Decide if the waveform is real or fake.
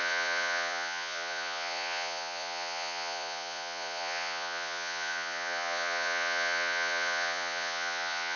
fake